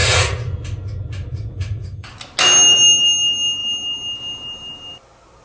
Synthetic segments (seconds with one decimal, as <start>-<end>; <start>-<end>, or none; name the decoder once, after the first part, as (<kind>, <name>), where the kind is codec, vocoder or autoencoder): 0.0-0.5 (vocoder, Vocos); 1.3-2.1